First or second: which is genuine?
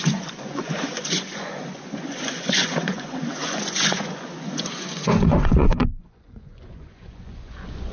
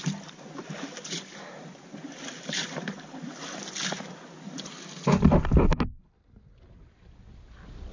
second